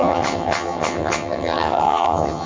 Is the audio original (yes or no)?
no